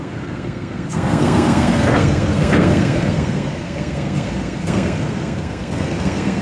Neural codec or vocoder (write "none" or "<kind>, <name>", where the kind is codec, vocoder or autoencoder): codec, SNAC